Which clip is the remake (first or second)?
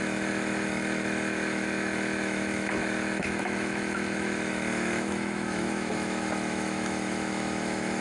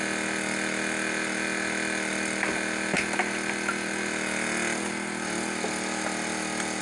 first